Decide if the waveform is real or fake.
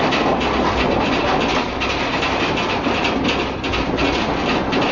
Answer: real